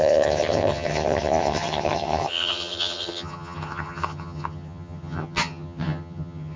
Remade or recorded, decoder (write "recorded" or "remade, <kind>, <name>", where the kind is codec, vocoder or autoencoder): remade, vocoder, HiFi-GAN